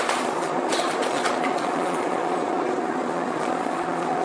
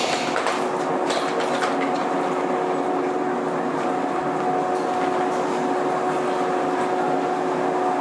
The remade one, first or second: first